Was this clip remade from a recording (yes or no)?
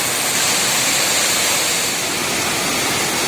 no